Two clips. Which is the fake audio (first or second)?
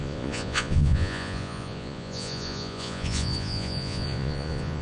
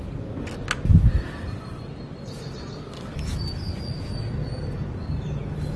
first